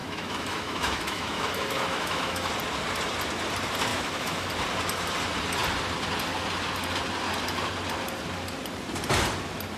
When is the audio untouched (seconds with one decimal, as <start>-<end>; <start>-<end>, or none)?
2.5-3.9; 4.5-9.8